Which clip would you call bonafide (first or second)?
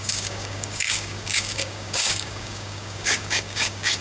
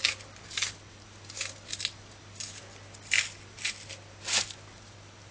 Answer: second